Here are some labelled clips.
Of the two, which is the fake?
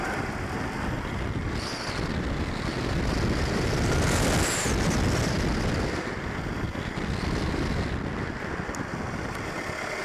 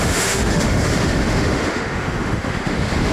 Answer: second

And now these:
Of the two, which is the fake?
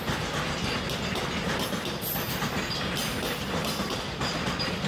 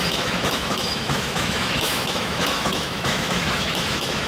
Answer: second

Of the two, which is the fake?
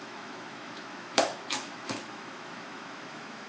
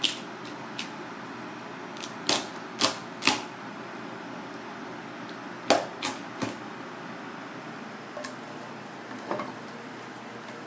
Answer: first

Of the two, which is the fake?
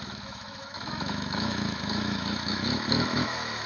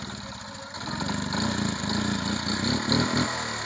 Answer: first